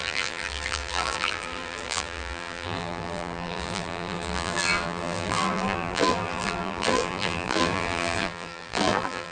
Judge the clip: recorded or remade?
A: remade